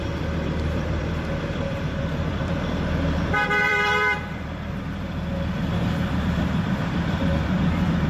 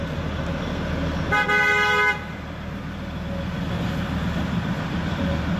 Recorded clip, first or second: second